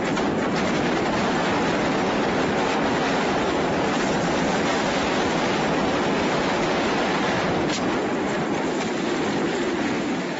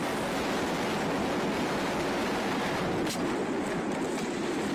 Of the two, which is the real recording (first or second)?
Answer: second